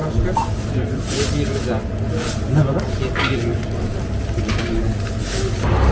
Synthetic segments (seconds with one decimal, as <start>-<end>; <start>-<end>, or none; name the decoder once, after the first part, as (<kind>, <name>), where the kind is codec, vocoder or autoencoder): none